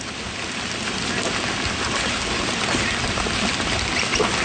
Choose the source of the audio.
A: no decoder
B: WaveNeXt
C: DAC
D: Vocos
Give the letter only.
A